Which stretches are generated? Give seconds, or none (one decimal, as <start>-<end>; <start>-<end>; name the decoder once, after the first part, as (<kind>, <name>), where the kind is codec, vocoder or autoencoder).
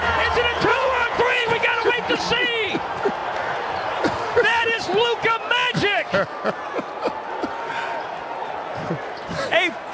0.7-1.9 (vocoder, Vocos)